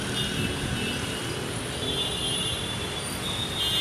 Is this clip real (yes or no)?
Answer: yes